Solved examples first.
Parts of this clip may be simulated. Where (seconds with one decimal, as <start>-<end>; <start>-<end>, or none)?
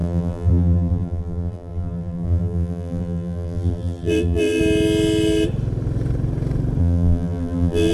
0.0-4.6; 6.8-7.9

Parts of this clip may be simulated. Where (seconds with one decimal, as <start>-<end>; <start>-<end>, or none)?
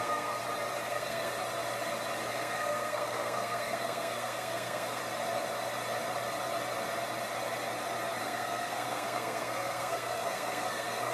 0.0-0.4; 0.9-1.3; 2.3-5.0; 8.2-11.1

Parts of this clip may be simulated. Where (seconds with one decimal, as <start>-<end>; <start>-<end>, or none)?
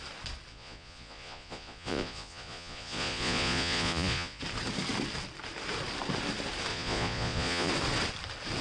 0.5-4.4; 6.7-7.7